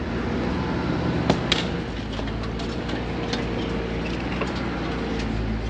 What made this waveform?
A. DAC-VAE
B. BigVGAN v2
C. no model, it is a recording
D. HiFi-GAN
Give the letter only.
C